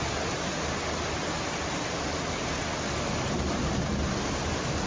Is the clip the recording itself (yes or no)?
yes